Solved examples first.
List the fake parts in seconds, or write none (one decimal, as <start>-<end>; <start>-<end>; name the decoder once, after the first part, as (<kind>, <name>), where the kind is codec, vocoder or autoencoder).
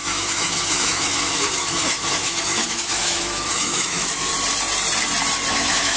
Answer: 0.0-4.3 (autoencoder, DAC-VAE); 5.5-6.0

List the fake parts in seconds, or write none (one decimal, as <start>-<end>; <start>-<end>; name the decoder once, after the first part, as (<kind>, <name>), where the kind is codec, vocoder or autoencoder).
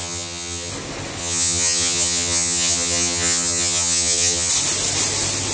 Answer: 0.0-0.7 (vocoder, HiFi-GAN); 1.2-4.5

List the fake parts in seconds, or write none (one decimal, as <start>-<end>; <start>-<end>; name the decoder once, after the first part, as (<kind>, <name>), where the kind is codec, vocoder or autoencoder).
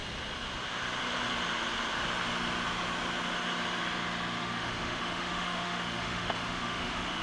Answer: 4.4-7.2 (autoencoder, DAC-VAE)